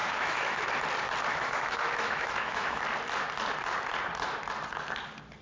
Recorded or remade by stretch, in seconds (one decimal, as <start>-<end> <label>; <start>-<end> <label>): 0.0-0.6 remade; 0.6-1.3 recorded; 1.3-2.8 remade; 2.8-5.4 recorded